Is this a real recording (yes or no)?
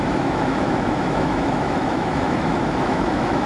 no